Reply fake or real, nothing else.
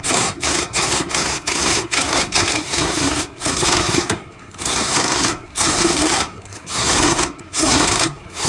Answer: fake